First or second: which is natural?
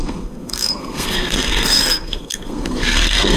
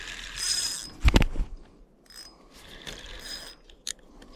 second